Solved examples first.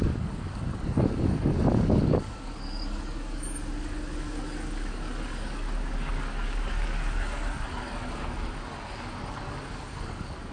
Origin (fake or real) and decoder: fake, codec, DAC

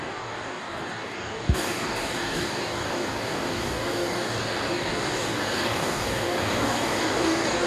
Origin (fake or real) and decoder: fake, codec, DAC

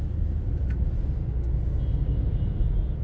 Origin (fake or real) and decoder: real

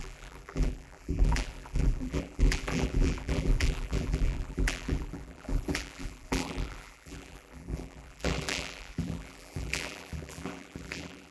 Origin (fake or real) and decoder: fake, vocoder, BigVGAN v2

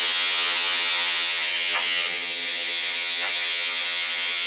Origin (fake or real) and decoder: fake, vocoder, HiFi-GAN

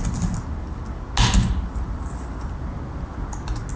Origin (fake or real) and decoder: real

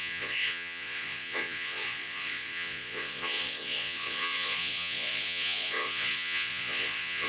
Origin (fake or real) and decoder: fake, vocoder, Vocos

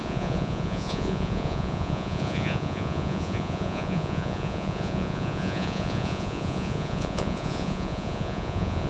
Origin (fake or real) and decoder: fake, vocoder, Vocos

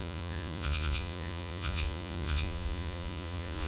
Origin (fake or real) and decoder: fake, vocoder, Vocos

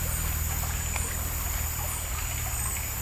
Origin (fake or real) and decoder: real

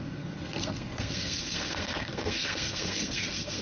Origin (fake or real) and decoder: fake, codec, SNAC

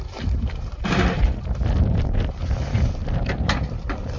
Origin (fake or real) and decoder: fake, vocoder, BigVGAN v2